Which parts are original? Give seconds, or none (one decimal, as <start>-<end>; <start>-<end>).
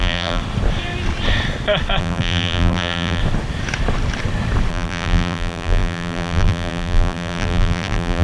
0.4-2.0; 3.2-4.7